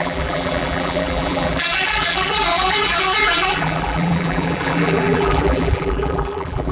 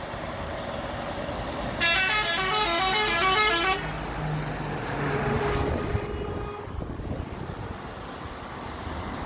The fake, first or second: first